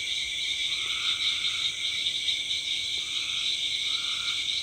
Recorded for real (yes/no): yes